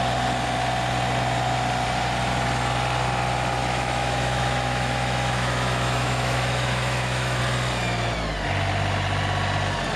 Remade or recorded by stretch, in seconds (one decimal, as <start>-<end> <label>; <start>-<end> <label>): 0.0-3.6 recorded; 3.6-7.4 remade; 7.4-10.0 recorded